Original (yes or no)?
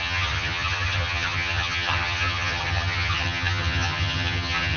no